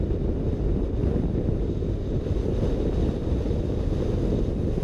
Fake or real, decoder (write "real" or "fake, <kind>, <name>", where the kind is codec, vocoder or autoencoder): real